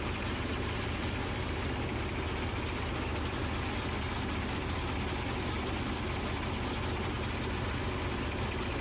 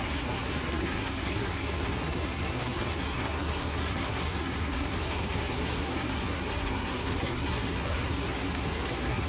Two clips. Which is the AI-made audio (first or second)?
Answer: second